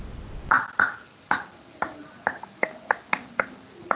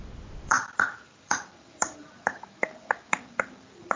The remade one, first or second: second